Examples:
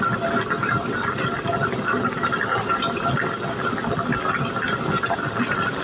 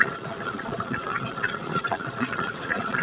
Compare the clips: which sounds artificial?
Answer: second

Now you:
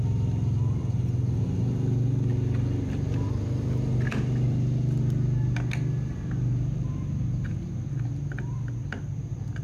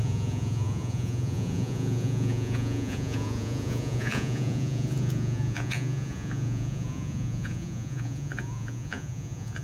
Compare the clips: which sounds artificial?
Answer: second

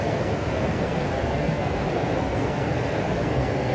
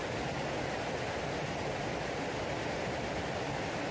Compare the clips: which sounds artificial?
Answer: first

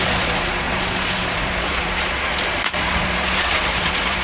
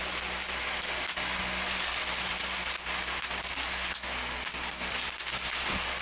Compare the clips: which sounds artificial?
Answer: first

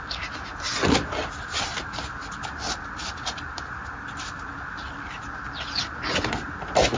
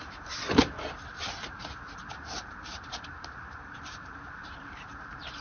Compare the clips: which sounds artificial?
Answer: second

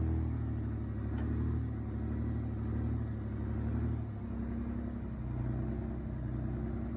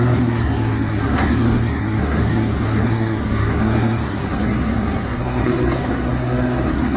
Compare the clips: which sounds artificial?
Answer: second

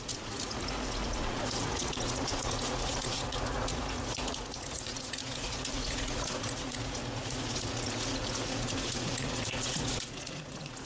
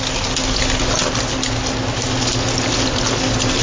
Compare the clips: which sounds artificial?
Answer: first